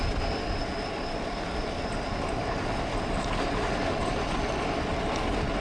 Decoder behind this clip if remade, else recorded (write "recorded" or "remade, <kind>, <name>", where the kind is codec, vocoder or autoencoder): recorded